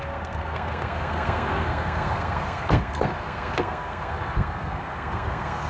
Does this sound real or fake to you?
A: fake